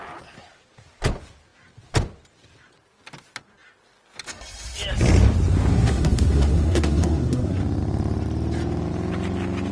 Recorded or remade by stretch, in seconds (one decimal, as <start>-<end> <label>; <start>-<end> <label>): 0.0-5.7 recorded; 5.7-7.6 remade; 7.6-9.7 recorded